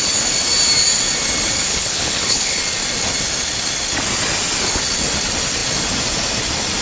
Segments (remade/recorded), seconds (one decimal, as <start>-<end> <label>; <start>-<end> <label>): 0.0-1.7 recorded; 1.7-2.6 remade; 2.6-6.8 recorded

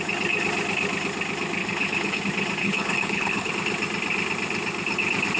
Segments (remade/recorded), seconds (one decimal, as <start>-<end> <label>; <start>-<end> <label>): 0.0-1.6 recorded; 1.6-2.2 remade; 2.2-2.6 recorded; 2.6-3.5 remade; 3.5-5.4 recorded

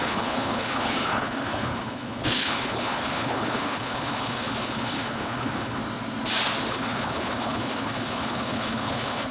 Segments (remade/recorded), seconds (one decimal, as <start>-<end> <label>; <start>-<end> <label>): 0.0-5.8 remade; 5.8-6.7 recorded; 6.7-9.3 remade

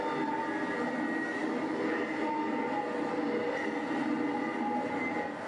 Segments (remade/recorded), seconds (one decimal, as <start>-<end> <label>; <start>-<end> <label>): 0.0-5.5 recorded

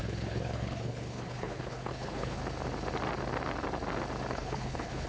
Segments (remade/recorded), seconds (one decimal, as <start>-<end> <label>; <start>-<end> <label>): 0.0-2.4 remade; 2.4-4.3 recorded; 4.3-5.1 remade

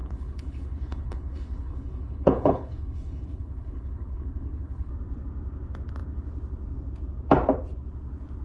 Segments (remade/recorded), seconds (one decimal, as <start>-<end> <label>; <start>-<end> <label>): 0.0-4.9 remade; 4.9-8.4 recorded